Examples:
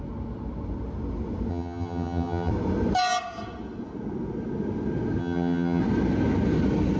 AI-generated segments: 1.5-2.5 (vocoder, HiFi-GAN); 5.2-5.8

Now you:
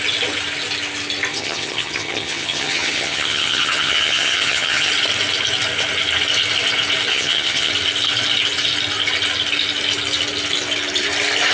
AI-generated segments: 1.3-4.9 (vocoder, HiFi-GAN); 7.1-7.7

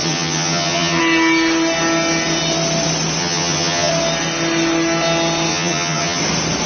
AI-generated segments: 0.0-1.0 (vocoder, HiFi-GAN); 3.2-3.9; 5.5-6.2

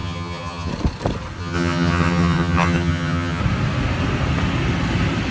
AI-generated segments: 0.0-0.7 (vocoder, HiFi-GAN); 1.4-3.4

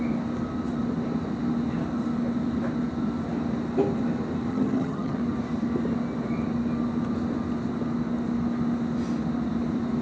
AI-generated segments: 4.5-5.2 (vocoder, HiFi-GAN)

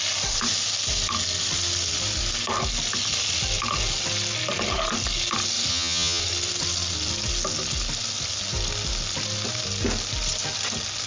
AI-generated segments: 5.7-6.2 (vocoder, HiFi-GAN)

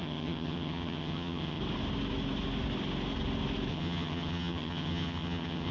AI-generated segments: 0.0-1.6 (vocoder, HiFi-GAN); 3.7-5.7

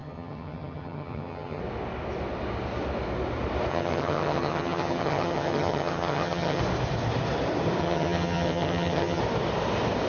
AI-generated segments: 0.0-1.6 (vocoder, HiFi-GAN); 3.7-6.6; 7.8-9.2